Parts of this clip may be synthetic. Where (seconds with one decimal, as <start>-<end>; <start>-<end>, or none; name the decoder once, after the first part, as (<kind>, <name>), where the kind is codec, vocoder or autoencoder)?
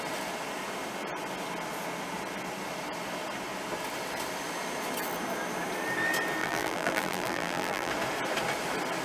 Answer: 6.4-7.9 (vocoder, BigVGAN v2)